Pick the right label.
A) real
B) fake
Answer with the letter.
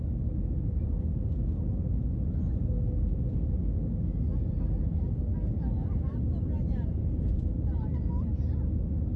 A